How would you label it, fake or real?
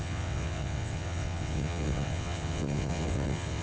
fake